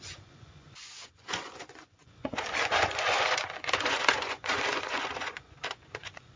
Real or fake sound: fake